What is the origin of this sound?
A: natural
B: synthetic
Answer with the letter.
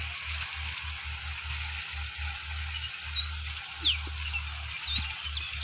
A